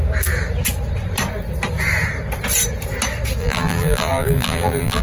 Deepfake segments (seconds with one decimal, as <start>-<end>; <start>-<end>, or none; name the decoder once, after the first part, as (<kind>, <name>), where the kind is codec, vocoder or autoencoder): 3.4-5.0 (vocoder, BigVGAN v2)